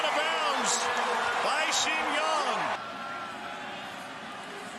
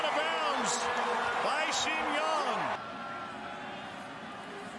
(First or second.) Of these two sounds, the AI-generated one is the first